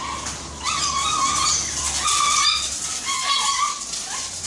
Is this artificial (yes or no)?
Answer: no